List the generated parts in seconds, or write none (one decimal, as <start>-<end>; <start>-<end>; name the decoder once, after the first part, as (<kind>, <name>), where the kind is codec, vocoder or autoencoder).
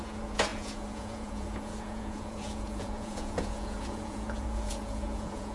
0.0-5.5 (vocoder, Vocos)